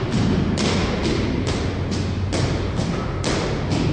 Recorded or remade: recorded